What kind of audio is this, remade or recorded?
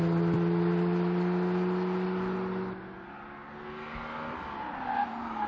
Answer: recorded